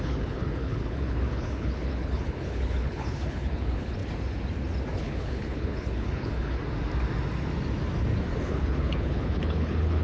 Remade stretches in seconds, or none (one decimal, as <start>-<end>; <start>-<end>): 0.0-4.0; 5.0-6.6; 8.4-10.0